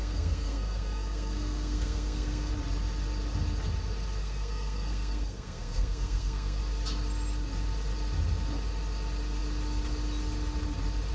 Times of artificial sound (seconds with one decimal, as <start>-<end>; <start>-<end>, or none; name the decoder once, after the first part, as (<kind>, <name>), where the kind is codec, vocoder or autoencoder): 0.0-2.5 (codec, SNAC); 4.2-6.6